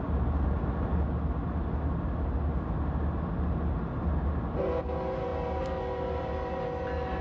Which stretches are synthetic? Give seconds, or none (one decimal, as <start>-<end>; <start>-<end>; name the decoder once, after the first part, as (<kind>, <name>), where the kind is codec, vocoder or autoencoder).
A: none